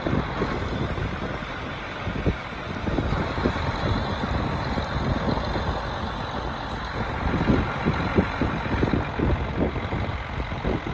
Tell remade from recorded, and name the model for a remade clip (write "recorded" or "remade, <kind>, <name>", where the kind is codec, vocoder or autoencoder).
recorded